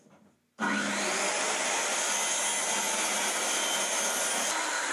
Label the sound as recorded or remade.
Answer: recorded